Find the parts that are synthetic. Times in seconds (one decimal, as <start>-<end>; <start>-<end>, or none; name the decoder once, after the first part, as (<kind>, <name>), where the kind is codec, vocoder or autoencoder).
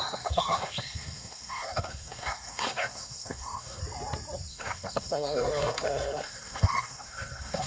0.0-3.8 (codec, SNAC); 4.5-7.7